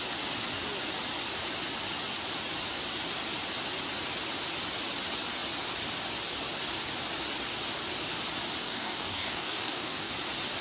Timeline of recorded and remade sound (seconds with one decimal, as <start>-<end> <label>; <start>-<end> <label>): 0.0-8.6 recorded; 8.6-10.1 remade; 10.1-10.6 recorded